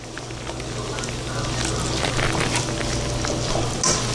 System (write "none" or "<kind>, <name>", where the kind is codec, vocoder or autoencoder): none